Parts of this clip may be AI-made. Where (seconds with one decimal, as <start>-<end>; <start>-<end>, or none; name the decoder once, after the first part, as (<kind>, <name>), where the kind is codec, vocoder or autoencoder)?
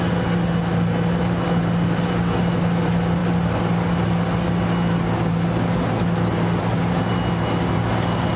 none